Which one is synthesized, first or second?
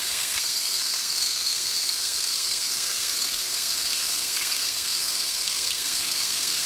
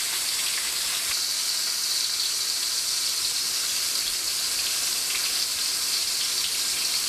first